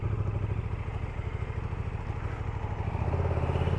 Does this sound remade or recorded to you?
recorded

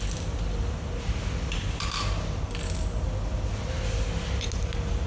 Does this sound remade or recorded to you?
recorded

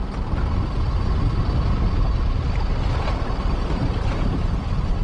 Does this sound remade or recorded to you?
recorded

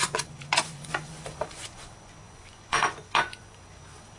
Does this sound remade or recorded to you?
remade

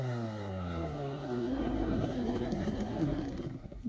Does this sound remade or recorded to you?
remade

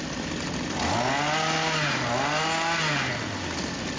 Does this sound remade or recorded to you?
recorded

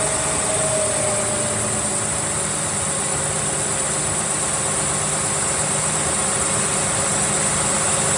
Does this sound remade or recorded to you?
recorded